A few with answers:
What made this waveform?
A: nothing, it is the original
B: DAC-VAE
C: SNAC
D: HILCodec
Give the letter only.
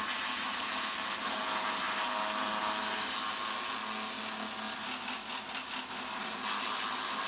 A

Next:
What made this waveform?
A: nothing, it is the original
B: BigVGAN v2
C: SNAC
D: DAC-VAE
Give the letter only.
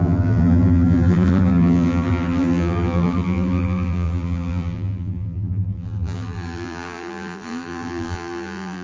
B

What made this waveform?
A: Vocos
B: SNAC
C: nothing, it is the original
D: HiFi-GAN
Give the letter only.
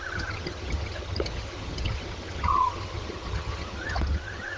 D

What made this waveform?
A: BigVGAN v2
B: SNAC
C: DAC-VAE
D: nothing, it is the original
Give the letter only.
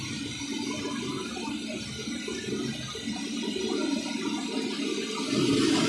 D